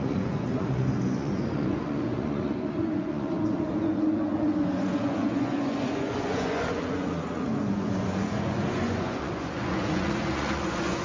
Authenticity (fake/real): fake